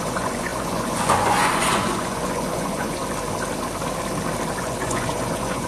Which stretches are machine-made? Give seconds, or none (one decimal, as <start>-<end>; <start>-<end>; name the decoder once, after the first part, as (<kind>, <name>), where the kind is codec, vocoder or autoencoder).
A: 0.0-3.0 (vocoder, Vocos); 4.6-5.7